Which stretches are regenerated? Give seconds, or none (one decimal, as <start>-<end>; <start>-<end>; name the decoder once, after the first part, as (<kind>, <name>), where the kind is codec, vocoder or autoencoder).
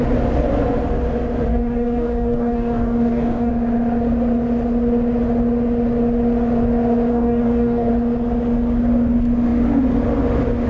1.5-3.5 (codec, DAC); 7.1-7.9